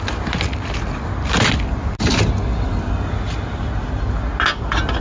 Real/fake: real